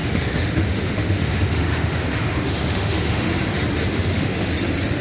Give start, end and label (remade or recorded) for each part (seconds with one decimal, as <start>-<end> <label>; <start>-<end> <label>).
0.0-3.3 remade; 3.3-3.9 recorded; 3.9-4.5 remade; 4.5-5.0 recorded

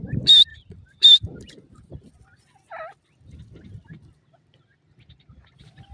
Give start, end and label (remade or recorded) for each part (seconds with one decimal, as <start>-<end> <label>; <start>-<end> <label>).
0.0-0.5 recorded; 0.5-2.1 remade; 2.1-5.9 recorded